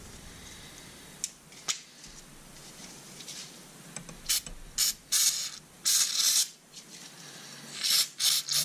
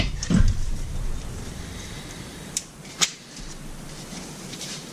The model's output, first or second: second